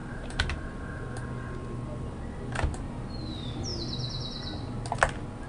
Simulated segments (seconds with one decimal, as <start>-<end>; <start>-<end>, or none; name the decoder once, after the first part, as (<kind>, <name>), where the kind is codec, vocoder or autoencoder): none